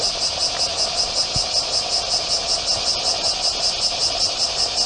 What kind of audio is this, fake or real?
real